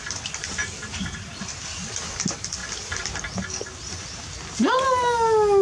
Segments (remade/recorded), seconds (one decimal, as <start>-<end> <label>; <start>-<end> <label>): 0.0-5.6 recorded